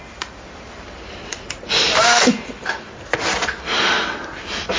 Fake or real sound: fake